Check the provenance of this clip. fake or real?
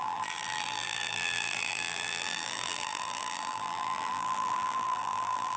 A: fake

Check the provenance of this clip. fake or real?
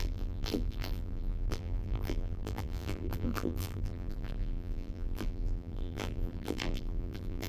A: fake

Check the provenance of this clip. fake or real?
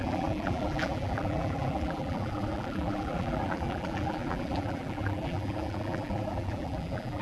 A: fake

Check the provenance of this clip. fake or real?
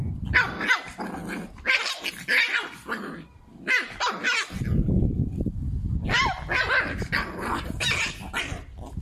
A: real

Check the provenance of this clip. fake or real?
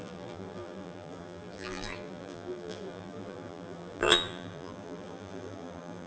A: fake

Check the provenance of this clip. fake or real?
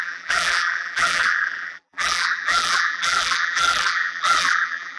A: fake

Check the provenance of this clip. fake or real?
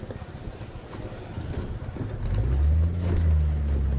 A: real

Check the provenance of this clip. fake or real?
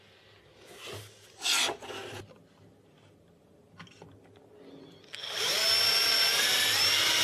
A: real